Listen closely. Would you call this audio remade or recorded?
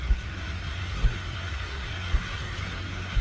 remade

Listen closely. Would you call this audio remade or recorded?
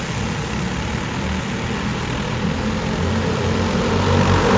recorded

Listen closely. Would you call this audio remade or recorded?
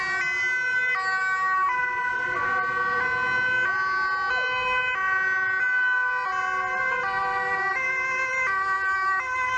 recorded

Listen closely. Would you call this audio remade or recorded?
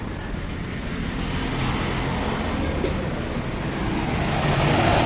recorded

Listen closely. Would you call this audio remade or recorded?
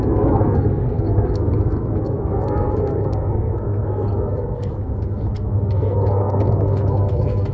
remade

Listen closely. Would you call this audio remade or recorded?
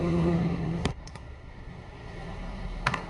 remade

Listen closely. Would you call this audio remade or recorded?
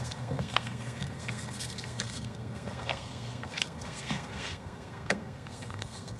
remade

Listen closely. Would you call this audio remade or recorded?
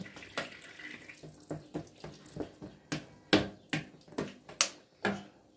recorded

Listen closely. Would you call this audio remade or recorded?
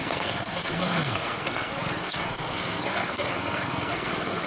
remade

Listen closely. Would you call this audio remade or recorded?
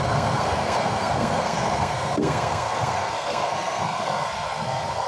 remade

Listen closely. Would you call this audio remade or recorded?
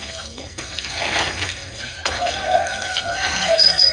remade